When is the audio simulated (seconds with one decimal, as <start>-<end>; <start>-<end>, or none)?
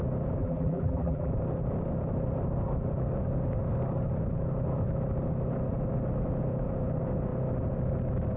0.4-1.3